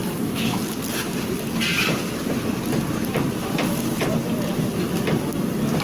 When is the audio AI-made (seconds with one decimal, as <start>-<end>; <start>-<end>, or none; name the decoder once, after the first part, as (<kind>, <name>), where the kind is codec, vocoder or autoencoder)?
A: 0.0-0.6 (autoencoder, DAC-VAE)